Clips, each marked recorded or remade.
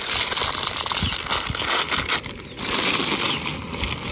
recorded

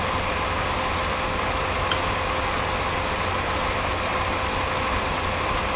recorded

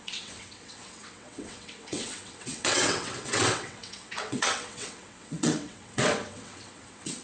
remade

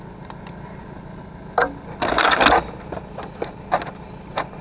recorded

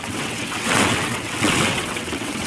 remade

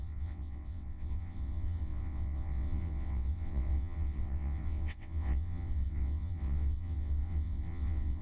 remade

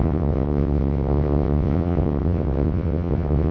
remade